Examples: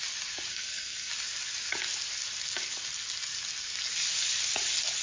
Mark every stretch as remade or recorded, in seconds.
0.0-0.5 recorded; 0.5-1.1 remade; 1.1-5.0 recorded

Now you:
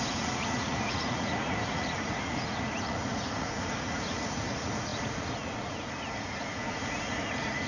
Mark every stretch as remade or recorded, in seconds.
0.0-7.7 remade

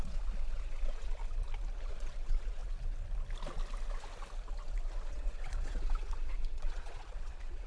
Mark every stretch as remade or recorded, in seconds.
0.0-1.2 remade; 1.2-1.9 recorded; 1.9-2.6 remade; 2.6-5.1 recorded; 5.1-7.7 remade